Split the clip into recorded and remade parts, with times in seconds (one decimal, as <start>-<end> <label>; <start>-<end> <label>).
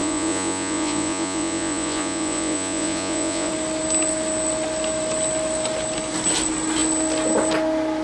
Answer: 0.0-3.5 remade; 3.5-8.0 recorded